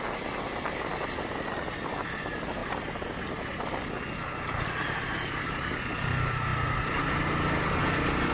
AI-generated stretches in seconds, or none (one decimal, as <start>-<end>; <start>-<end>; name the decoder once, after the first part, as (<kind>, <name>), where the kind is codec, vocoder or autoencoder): none